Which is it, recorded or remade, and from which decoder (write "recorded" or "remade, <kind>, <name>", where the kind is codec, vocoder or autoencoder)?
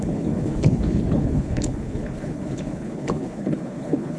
remade, codec, HILCodec